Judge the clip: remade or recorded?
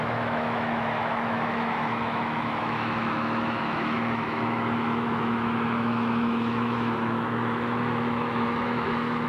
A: remade